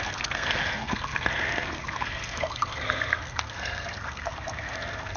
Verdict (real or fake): fake